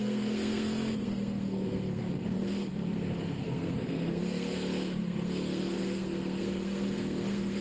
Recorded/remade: remade